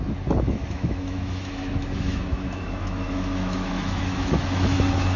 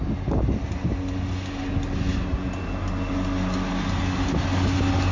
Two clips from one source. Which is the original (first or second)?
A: second